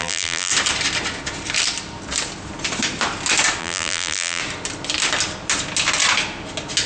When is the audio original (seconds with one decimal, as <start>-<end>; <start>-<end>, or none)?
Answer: 0.5-3.6; 4.4-6.9